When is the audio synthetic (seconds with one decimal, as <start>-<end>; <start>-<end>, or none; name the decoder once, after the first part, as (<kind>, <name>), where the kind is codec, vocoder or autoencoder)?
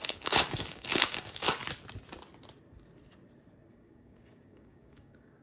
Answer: 0.0-1.6 (codec, DAC); 3.7-5.4